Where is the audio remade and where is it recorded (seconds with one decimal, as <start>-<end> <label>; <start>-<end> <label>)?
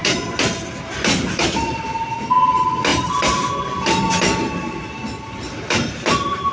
0.0-2.9 recorded; 2.9-3.5 remade; 3.5-6.5 recorded